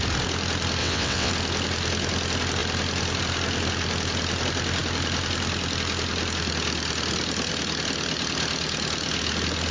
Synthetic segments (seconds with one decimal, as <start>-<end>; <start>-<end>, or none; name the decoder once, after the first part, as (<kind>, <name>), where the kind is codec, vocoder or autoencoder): 0.8-1.3 (vocoder, WaveNeXt)